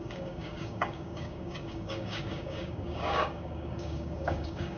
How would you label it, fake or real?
fake